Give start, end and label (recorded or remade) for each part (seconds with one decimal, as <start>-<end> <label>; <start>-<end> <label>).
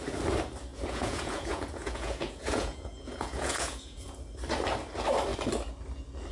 0.0-0.7 recorded; 0.7-4.2 remade; 4.2-6.3 recorded